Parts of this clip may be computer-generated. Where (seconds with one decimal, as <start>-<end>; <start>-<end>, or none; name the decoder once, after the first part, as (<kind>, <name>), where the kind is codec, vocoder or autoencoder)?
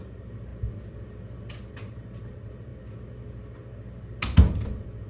0.0-0.5 (vocoder, BigVGAN v2); 1.7-2.7